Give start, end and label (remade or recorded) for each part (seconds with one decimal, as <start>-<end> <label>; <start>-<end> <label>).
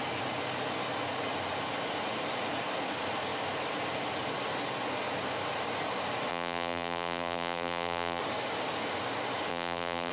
0.0-6.3 recorded; 6.3-8.2 remade; 8.2-9.5 recorded; 9.5-10.1 remade